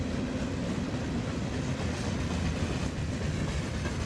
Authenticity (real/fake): real